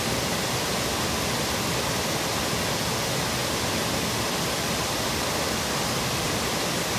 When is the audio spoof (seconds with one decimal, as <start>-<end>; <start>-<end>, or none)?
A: 3.4-7.0